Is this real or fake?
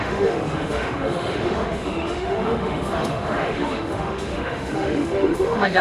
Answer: fake